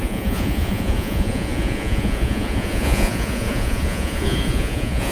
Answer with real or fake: fake